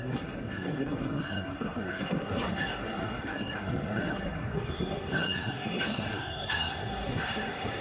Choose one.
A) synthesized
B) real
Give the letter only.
A